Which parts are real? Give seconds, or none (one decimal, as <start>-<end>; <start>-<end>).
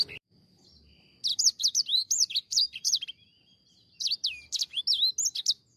0.0-1.3; 4.8-5.8